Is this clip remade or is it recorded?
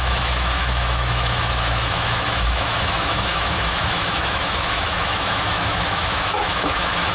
remade